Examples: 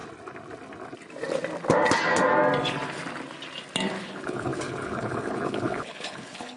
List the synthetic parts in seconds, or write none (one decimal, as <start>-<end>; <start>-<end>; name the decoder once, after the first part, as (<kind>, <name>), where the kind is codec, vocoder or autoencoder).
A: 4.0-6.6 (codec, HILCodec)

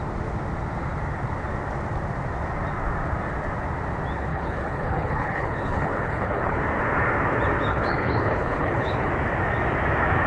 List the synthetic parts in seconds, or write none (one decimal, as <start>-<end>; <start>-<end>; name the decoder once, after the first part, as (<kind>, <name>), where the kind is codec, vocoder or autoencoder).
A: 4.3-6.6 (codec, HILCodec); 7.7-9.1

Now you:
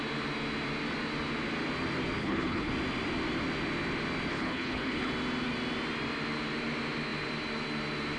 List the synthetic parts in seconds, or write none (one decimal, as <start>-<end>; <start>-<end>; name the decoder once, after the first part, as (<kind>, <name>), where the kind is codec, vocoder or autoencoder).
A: 2.2-2.7 (codec, HILCodec); 4.3-5.1

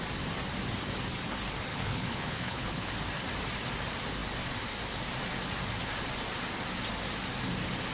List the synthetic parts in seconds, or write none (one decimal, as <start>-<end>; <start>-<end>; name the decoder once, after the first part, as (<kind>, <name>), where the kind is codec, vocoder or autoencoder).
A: 1.7-2.9 (codec, HILCodec)

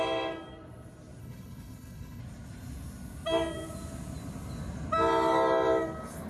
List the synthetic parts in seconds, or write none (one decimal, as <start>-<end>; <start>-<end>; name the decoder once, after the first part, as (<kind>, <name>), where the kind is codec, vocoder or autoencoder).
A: 1.2-2.2 (codec, HILCodec)

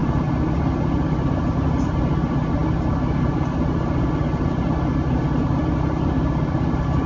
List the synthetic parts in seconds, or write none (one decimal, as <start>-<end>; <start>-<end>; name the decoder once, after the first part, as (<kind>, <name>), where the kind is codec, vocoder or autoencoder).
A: none